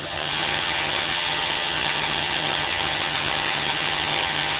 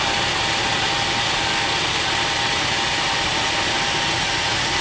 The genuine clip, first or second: second